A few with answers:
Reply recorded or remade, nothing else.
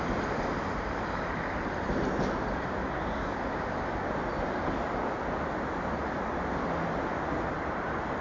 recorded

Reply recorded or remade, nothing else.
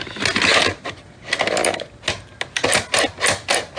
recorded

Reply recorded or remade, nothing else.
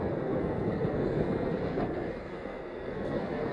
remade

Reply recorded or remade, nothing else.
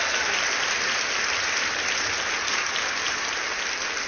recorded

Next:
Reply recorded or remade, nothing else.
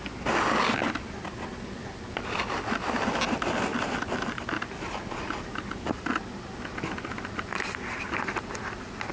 recorded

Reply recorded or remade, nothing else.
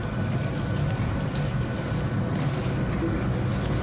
recorded